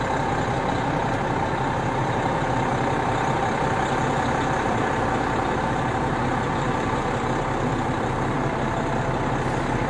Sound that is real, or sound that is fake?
fake